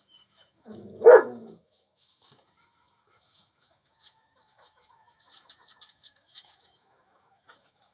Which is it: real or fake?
fake